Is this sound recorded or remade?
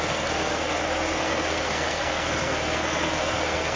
remade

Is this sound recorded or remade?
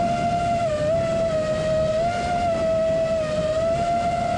recorded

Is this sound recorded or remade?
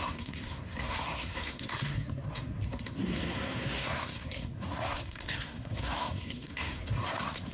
remade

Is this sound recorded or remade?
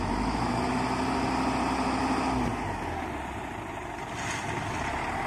recorded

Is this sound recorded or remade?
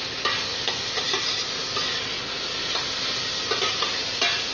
recorded